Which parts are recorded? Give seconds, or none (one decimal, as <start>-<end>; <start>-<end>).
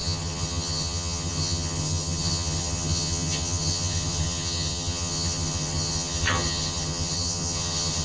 none